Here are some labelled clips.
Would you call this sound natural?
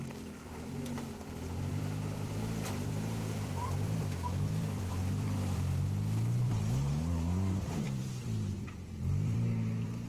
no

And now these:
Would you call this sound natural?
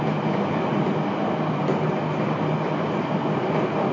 yes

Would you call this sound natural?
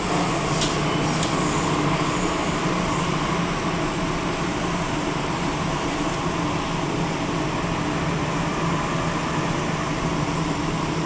yes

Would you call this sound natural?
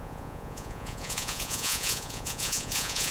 no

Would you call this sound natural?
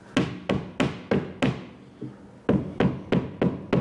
yes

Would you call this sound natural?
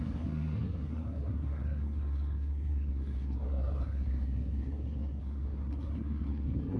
no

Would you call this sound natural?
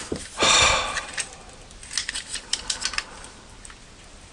yes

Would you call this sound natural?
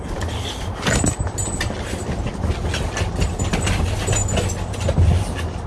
yes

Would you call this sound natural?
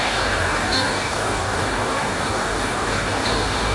no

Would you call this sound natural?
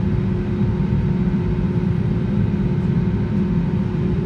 yes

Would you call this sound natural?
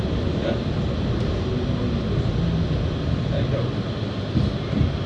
yes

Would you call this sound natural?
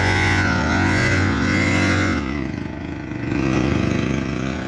no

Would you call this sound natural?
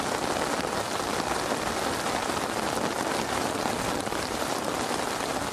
yes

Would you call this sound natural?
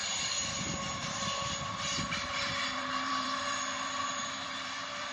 no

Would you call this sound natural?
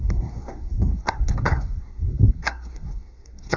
no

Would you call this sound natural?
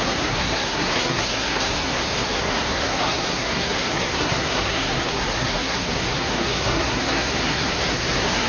no